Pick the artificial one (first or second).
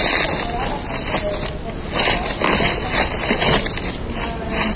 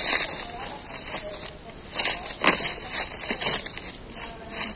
second